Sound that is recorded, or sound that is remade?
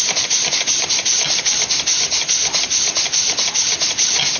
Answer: recorded